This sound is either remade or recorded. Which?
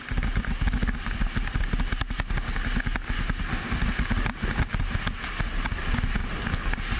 recorded